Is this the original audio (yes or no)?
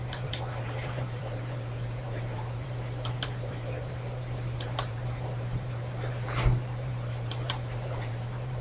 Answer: no